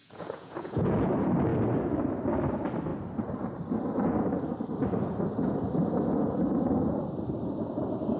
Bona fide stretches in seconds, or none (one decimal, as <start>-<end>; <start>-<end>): 1.1-8.2